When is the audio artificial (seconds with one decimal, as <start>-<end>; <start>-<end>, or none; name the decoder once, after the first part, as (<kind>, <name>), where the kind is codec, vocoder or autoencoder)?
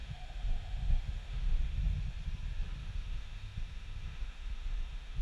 0.0-1.8 (autoencoder, DAC-VAE); 2.8-5.2